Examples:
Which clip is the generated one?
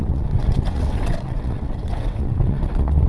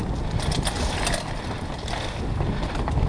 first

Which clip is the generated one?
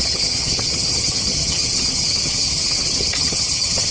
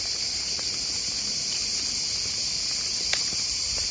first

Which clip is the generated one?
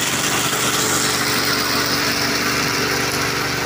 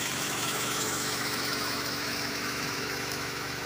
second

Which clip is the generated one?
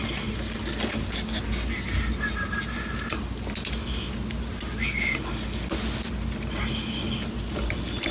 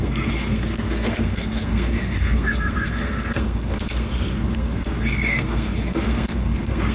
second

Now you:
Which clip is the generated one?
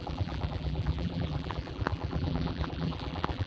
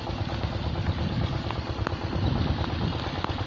first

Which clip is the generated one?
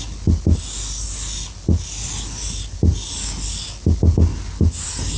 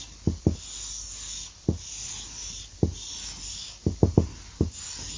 second